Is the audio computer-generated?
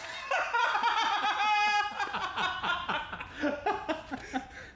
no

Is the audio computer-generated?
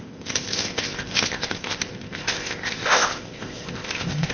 yes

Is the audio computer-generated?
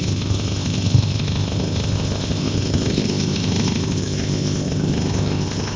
yes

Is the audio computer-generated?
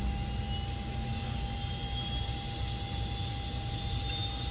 no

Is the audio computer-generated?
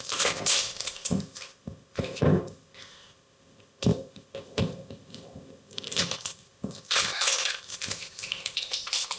yes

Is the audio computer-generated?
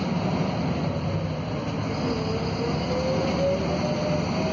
no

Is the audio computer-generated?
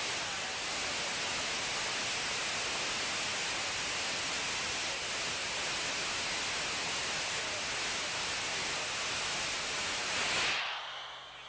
no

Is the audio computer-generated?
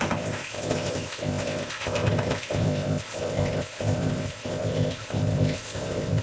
yes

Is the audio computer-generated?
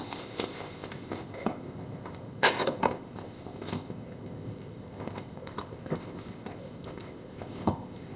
yes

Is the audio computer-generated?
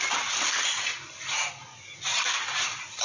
no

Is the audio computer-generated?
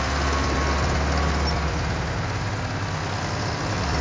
no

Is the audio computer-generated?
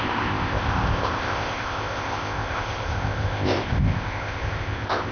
yes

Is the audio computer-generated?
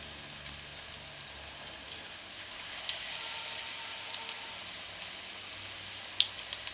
no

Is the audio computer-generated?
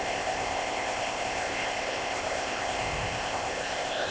yes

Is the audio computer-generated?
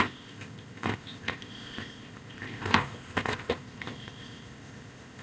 yes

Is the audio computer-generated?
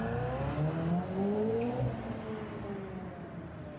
no